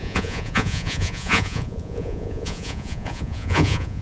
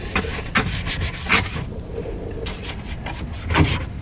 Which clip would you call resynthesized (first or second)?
first